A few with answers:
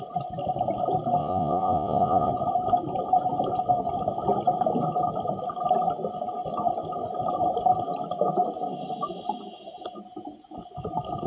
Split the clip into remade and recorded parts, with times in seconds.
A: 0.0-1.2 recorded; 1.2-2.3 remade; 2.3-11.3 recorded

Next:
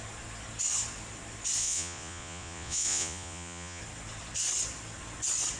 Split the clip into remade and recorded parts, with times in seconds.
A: 0.0-1.6 recorded; 1.6-3.8 remade; 3.8-5.6 recorded

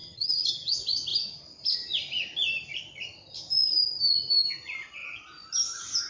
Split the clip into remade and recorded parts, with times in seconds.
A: 0.0-0.7 remade; 0.7-6.1 recorded

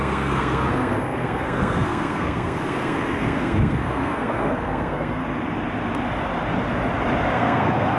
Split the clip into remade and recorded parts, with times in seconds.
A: 0.0-5.2 remade; 5.2-7.3 recorded; 7.3-8.0 remade

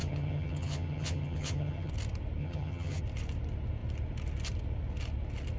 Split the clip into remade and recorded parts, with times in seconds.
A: 0.0-1.9 remade; 1.9-2.4 recorded; 2.4-3.0 remade; 3.0-5.6 recorded

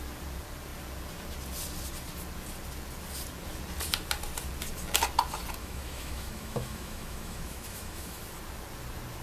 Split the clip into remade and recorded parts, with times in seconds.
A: 0.0-5.6 recorded; 5.6-8.2 remade; 8.2-9.2 recorded

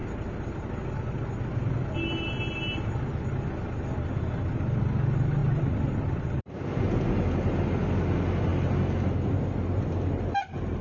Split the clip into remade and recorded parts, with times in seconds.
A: 0.0-10.8 recorded

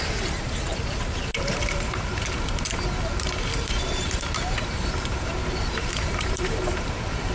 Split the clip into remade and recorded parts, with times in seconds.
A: 0.0-0.7 remade; 0.7-1.4 recorded; 1.4-7.3 remade